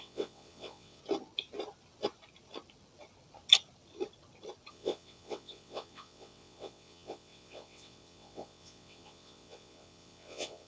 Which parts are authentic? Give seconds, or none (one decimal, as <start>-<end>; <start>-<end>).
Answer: 1.0-4.7